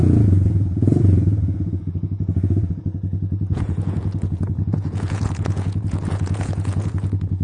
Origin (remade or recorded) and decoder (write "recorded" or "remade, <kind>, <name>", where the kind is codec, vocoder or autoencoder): remade, vocoder, Vocos